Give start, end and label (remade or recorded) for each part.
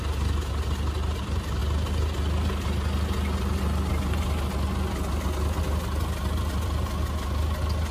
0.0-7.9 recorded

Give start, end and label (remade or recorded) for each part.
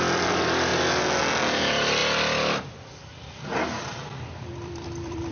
0.0-0.7 remade; 0.7-1.6 recorded; 1.6-2.0 remade; 2.0-3.1 recorded; 3.1-3.5 remade; 3.5-4.5 recorded; 4.5-5.3 remade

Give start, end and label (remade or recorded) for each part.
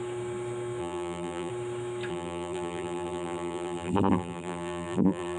0.0-0.8 recorded; 0.8-1.5 remade; 1.5-2.1 recorded; 2.1-5.4 remade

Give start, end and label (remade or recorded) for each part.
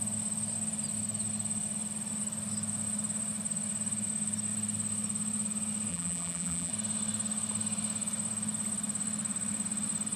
0.0-5.9 recorded; 5.9-6.7 remade; 6.7-10.2 recorded